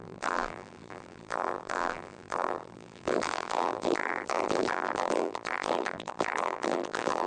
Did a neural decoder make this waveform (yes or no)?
yes